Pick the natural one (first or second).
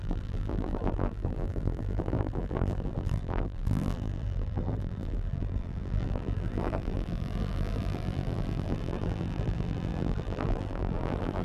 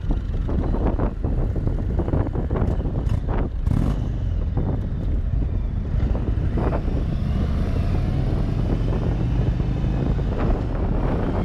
second